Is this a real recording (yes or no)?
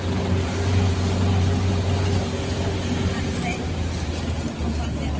yes